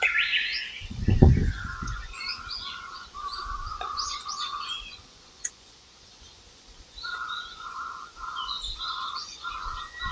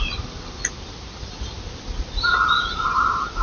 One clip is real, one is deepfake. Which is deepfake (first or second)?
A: first